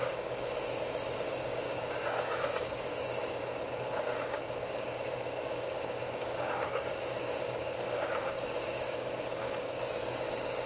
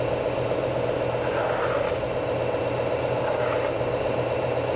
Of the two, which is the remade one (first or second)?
first